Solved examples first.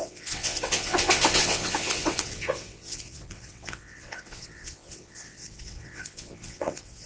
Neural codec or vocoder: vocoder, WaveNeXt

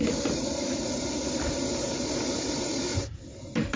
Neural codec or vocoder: none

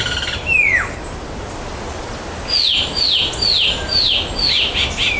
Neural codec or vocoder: none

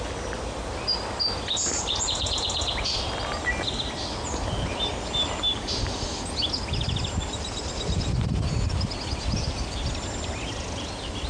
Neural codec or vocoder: none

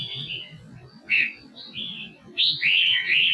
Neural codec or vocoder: vocoder, WaveNeXt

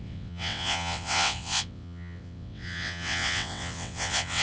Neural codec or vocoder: vocoder, WaveNeXt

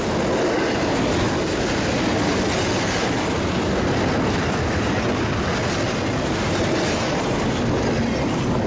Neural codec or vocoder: none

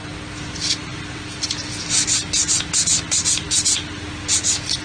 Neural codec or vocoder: none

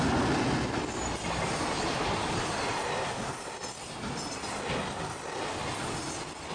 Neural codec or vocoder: none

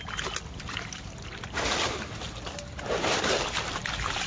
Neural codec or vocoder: none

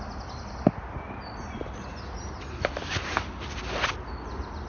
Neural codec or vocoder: none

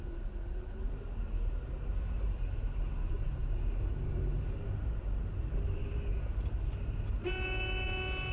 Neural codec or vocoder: none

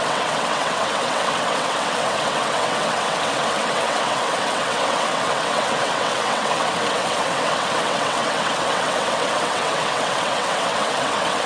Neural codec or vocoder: vocoder, WaveNeXt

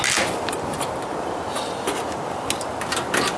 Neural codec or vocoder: none